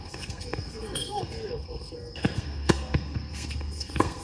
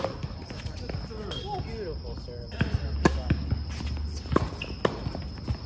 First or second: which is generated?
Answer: first